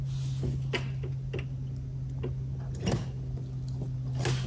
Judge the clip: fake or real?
real